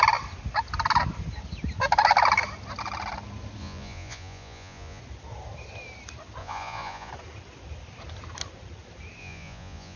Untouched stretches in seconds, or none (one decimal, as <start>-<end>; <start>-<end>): 0.0-3.6; 5.0-6.4; 7.1-9.2